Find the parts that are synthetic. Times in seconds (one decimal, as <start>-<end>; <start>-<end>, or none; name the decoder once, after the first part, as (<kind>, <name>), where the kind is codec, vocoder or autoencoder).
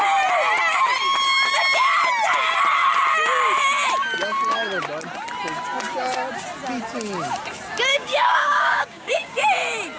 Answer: 7.9-9.4 (codec, DAC)